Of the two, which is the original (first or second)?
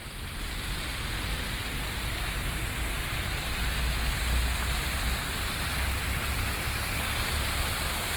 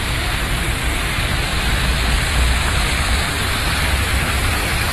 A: first